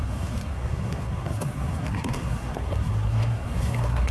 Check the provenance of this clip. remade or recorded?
remade